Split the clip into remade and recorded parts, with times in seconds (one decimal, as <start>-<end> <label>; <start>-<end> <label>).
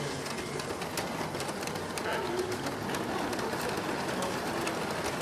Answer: 0.0-5.2 recorded